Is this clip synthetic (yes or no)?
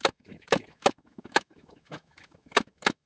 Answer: yes